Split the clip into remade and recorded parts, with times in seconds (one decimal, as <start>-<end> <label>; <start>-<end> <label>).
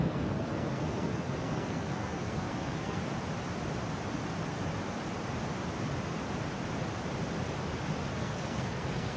0.0-3.0 remade; 3.0-8.1 recorded; 8.1-9.2 remade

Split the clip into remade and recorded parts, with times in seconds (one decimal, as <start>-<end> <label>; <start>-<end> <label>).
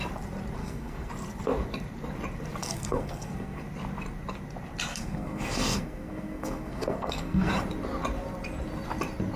0.0-0.6 recorded; 0.6-1.1 remade; 1.1-2.6 recorded; 2.6-3.6 remade; 3.6-4.9 recorded; 4.9-7.5 remade; 7.5-9.4 recorded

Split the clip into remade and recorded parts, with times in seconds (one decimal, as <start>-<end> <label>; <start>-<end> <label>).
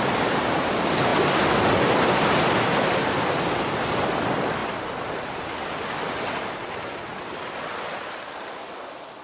0.0-9.2 recorded